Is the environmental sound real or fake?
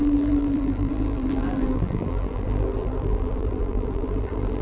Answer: fake